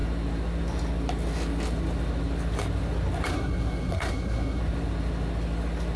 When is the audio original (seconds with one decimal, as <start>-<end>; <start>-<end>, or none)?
0.0-3.3; 4.6-6.0